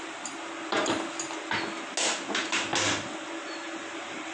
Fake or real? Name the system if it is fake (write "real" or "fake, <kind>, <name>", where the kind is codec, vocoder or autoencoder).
real